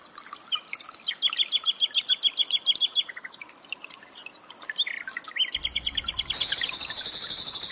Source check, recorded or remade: recorded